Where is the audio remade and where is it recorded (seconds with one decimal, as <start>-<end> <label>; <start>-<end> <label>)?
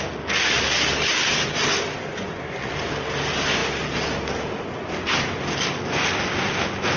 0.0-2.1 recorded; 2.1-2.7 remade; 2.7-7.0 recorded